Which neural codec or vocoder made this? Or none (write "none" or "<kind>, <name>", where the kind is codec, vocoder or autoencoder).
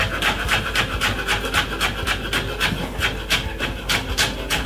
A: none